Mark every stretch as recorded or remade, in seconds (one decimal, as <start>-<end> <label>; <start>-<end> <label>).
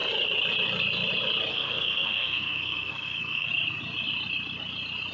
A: 0.0-1.5 recorded; 1.5-3.5 remade; 3.5-5.1 recorded